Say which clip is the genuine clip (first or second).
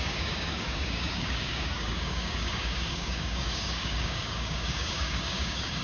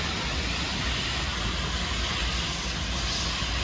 second